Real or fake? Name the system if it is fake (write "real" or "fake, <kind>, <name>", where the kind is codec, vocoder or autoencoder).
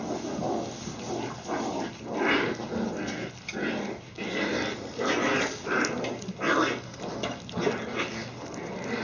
real